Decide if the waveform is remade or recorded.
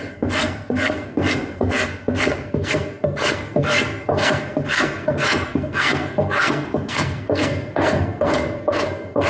remade